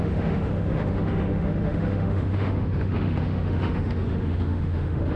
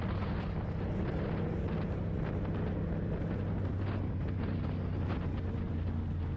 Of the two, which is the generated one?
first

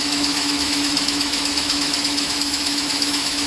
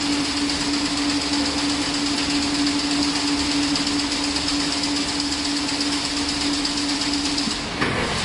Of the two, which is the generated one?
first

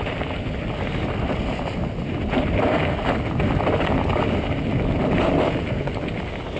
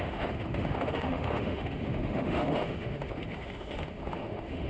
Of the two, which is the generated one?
second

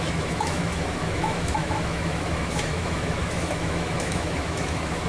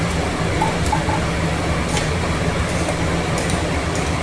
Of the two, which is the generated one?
first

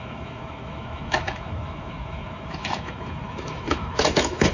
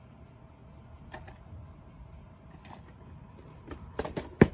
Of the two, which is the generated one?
first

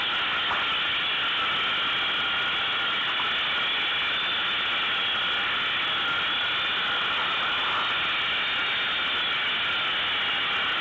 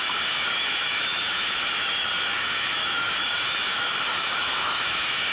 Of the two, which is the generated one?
second